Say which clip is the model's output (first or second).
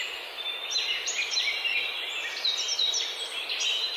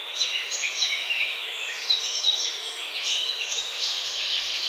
second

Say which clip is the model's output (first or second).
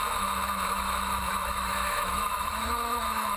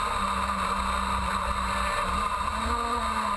first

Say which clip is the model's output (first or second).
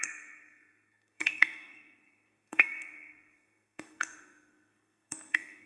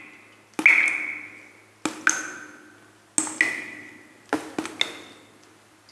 first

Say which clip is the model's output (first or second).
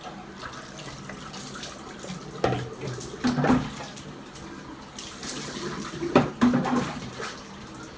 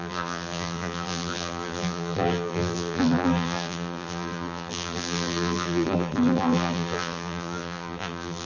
second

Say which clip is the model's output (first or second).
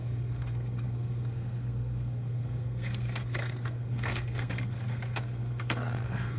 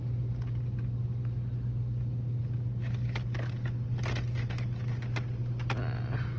first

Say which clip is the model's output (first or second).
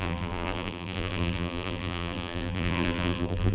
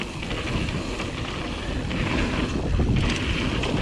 first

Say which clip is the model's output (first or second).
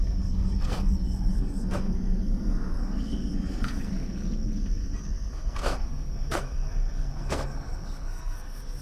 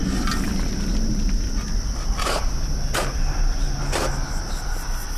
first